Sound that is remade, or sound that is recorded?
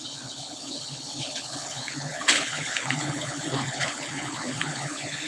remade